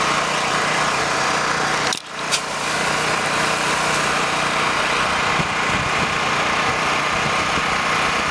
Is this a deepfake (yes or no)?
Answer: yes